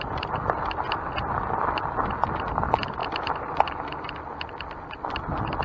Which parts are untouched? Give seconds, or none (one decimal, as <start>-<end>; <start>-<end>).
0.0-5.6